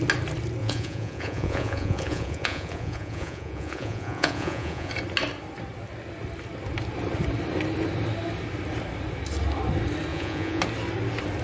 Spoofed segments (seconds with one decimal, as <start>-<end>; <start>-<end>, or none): 0.6-4.9; 10.1-10.6